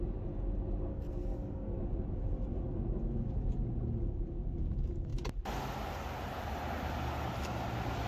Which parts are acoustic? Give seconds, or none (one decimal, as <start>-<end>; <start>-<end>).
0.0-0.9; 1.8-8.1